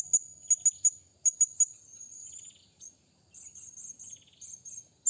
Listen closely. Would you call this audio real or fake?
real